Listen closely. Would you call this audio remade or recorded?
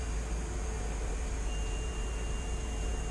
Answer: recorded